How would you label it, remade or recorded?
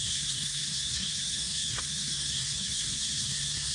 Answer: remade